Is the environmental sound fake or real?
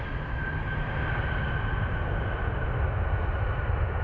real